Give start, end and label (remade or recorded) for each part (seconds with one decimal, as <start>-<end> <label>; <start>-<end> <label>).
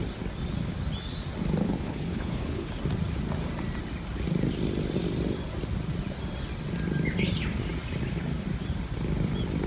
0.0-1.6 recorded; 1.6-2.7 remade; 2.7-9.7 recorded